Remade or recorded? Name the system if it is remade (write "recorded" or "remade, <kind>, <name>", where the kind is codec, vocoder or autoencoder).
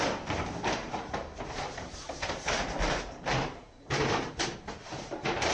remade, vocoder, BigVGAN v2